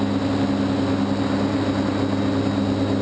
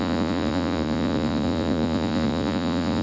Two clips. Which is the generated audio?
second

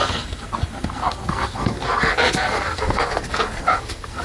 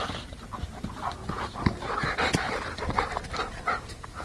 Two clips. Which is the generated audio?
first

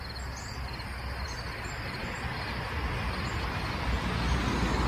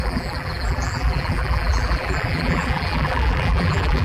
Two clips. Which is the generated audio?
second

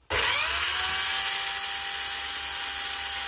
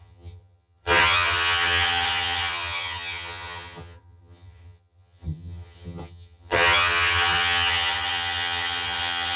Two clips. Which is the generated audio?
second